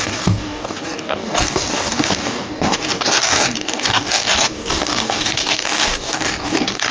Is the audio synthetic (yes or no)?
yes